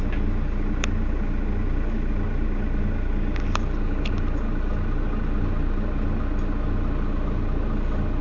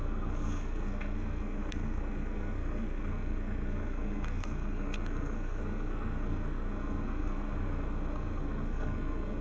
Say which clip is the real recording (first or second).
first